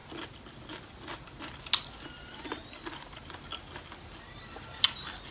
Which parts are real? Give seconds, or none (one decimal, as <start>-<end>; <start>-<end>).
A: 0.0-5.3